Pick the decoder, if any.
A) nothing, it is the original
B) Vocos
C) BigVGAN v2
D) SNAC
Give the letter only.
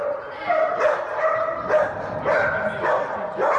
A